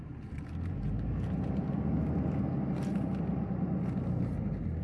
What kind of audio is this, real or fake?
real